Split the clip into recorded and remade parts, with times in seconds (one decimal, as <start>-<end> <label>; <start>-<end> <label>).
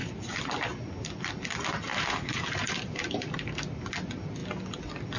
0.0-1.3 remade; 1.3-1.9 recorded; 1.9-3.9 remade; 3.9-5.2 recorded